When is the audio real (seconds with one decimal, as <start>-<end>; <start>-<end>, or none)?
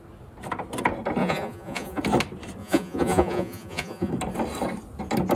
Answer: 0.0-1.2; 2.0-2.6; 4.1-5.4